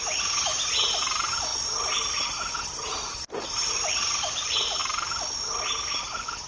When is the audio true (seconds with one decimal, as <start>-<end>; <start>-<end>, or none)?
0.0-6.5